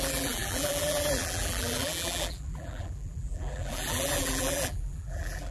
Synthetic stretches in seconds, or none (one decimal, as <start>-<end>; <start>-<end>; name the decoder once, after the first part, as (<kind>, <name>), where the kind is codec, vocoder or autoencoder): 0.0-5.5 (vocoder, BigVGAN v2)